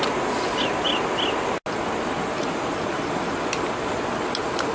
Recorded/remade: recorded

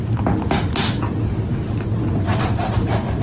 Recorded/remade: recorded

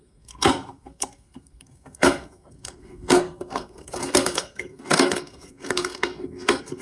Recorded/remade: remade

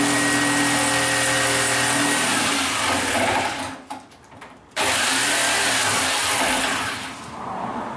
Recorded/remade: recorded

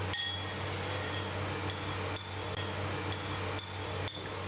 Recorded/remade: recorded